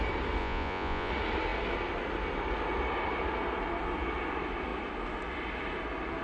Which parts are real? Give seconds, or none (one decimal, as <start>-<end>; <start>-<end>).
0.0-0.4; 1.1-6.2